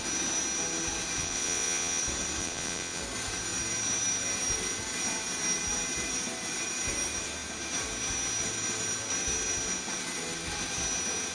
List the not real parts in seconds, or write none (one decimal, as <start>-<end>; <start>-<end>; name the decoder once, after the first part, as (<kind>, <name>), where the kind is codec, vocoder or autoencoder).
1.2-2.0 (vocoder, Vocos); 2.4-3.0